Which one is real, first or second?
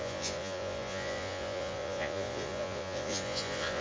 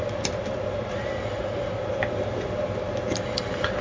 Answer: second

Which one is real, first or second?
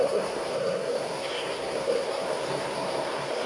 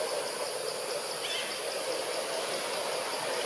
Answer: second